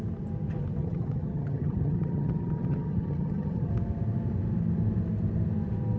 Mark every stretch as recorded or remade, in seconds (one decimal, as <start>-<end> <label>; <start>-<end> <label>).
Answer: 0.0-0.8 recorded; 0.8-3.7 remade; 3.7-6.0 recorded